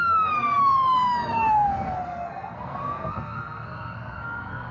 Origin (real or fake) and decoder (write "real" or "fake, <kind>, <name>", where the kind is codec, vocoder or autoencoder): fake, codec, SNAC